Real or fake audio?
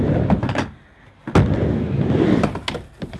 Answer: real